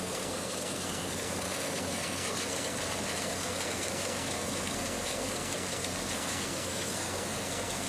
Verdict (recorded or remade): remade